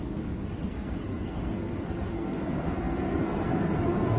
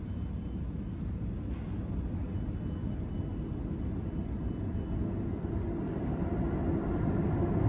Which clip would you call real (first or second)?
second